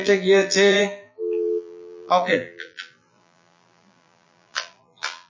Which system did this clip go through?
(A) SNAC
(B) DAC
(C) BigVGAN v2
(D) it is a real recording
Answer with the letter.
C